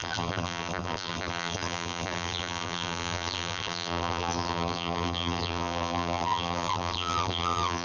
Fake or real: fake